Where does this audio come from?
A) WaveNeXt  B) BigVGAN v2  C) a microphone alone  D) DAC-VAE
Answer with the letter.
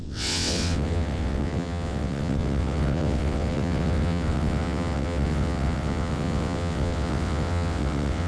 A